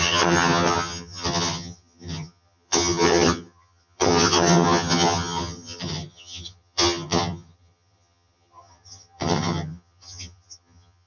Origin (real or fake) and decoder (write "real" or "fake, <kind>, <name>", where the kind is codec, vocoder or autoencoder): fake, vocoder, HiFi-GAN